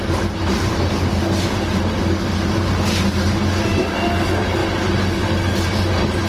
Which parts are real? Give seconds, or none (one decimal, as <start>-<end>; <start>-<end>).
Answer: 0.0-6.3